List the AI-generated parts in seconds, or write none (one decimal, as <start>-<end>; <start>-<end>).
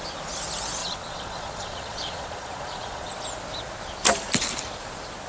0.8-3.1